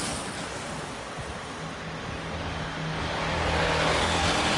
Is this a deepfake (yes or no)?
no